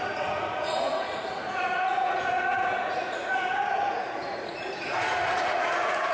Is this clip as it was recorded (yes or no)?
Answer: no